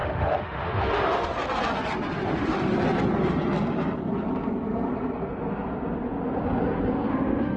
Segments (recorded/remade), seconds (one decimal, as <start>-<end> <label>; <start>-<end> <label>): 0.0-1.3 remade; 1.3-2.3 recorded; 2.3-2.7 remade; 2.7-7.1 recorded; 7.1-7.6 remade